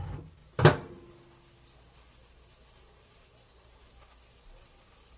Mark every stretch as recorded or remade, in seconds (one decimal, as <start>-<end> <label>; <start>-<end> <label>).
0.0-5.2 recorded